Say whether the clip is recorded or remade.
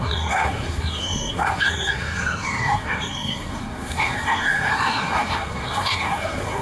remade